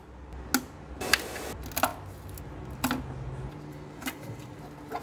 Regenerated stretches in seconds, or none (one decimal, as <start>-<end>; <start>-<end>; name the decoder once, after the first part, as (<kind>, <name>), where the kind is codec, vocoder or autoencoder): 3.7-4.6 (vocoder, BigVGAN v2)